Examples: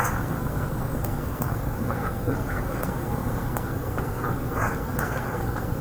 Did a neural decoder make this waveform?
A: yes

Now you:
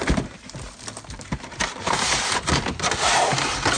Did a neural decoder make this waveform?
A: no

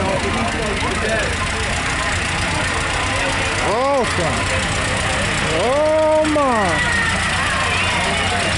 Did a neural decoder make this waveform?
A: no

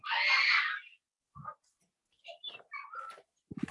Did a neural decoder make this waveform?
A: no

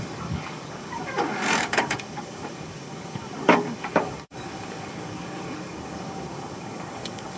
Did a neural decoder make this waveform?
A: yes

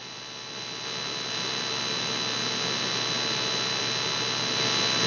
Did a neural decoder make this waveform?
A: no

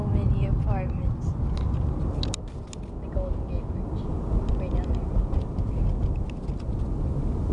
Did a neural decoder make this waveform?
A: no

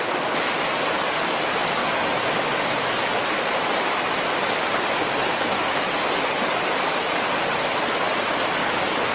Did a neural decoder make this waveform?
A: no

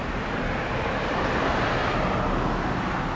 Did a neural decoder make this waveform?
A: no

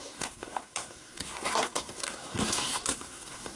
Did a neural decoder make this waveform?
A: yes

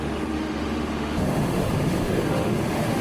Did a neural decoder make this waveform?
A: yes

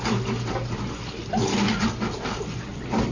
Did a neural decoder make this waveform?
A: no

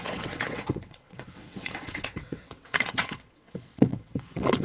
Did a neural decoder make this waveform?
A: yes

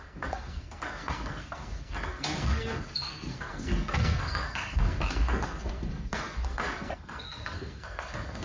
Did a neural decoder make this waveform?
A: yes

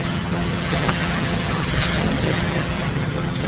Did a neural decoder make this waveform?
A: yes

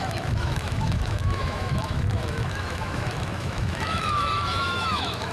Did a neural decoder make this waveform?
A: yes